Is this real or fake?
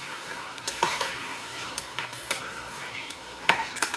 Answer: fake